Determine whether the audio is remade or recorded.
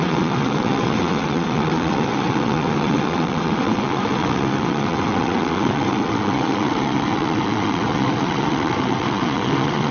remade